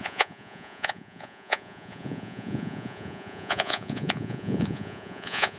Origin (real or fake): fake